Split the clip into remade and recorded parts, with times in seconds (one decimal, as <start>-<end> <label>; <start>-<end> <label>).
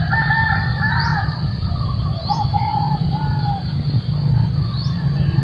0.0-1.1 recorded; 1.1-1.7 remade; 1.7-2.2 recorded; 2.2-3.5 remade; 3.5-5.4 recorded